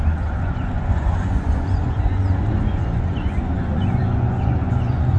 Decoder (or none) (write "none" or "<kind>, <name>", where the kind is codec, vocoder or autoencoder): vocoder, Vocos